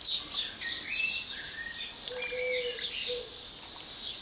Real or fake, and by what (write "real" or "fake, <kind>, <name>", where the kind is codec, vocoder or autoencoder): real